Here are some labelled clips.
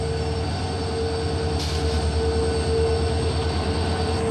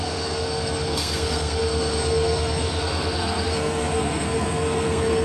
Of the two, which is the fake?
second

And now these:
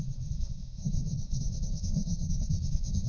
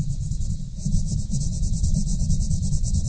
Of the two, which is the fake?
first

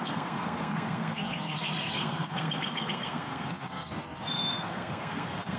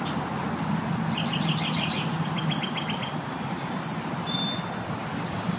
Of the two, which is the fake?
first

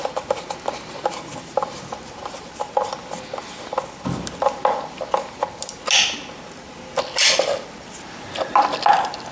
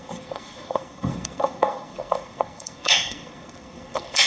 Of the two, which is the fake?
second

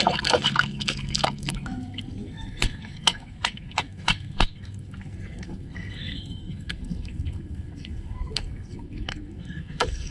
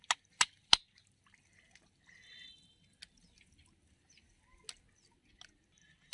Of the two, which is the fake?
first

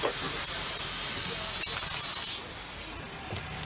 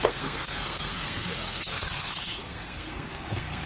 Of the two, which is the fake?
second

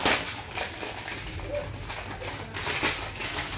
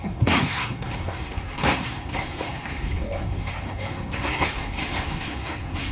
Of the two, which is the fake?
second